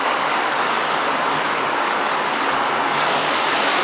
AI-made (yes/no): yes